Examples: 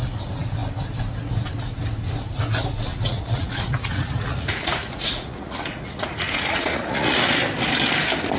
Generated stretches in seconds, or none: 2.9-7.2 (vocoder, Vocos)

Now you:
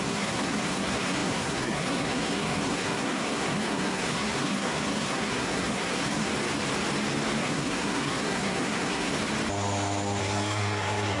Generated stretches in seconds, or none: 0.0-6.3 (codec, SNAC); 7.4-9.1; 10.2-11.2

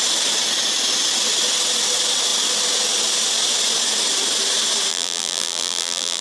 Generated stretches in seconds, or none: 4.9-6.2 (vocoder, BigVGAN v2)

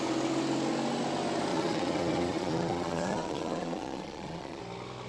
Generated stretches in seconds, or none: 1.5-4.6 (vocoder, Vocos)

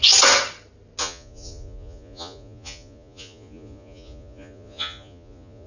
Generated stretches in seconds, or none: 1.0-5.7 (vocoder, Vocos)

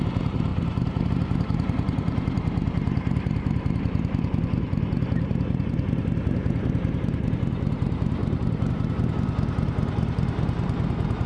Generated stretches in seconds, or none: 0.0-11.3 (vocoder, BigVGAN v2)